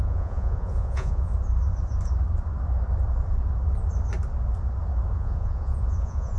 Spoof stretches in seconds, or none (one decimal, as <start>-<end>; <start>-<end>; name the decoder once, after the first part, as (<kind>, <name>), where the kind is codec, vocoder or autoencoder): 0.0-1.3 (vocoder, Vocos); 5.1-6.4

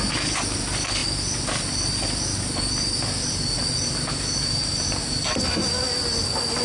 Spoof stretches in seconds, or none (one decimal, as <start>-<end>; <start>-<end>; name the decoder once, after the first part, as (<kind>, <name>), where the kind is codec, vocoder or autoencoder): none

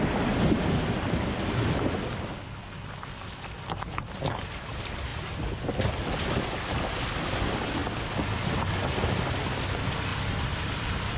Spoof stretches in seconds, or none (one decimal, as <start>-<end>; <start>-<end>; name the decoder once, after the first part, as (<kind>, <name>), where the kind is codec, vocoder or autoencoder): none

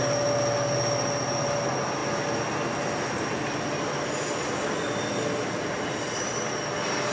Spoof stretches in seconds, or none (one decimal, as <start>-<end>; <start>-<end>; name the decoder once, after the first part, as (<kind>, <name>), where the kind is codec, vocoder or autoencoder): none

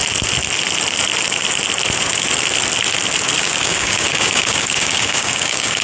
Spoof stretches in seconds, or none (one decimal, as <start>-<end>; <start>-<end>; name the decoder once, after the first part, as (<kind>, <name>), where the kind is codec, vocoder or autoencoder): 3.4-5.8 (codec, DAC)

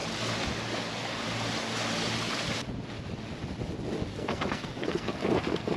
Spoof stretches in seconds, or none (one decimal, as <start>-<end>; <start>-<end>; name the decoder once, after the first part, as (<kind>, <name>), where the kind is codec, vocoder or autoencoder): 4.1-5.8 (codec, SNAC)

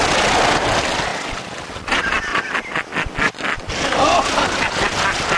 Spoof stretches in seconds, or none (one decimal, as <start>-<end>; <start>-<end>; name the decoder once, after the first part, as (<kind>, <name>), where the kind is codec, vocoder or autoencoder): 1.1-1.7 (vocoder, BigVGAN v2); 2.3-3.7

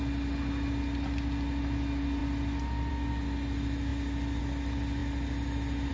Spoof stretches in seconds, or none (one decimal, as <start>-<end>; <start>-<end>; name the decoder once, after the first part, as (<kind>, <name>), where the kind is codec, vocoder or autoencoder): none